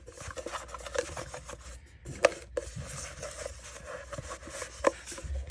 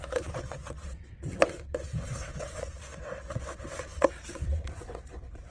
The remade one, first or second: second